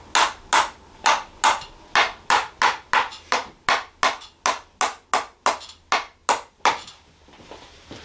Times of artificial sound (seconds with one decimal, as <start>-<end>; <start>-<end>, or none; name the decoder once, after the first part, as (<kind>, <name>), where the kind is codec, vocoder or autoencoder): none